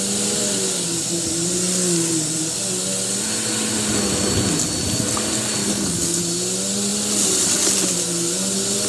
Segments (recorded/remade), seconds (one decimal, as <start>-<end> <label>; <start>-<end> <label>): 0.0-5.6 recorded; 5.6-6.2 remade; 6.2-8.9 recorded